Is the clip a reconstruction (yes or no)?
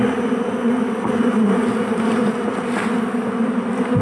no